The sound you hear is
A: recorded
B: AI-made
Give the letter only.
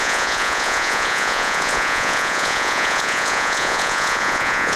B